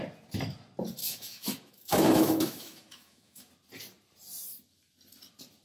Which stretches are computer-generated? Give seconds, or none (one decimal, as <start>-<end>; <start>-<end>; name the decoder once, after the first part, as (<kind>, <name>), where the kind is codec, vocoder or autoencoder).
1.0-3.5 (autoencoder, DAC-VAE)